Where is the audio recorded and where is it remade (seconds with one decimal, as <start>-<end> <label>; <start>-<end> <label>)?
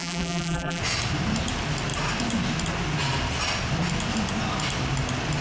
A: 0.0-0.8 remade; 0.8-5.4 recorded